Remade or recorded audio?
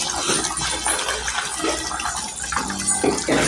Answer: recorded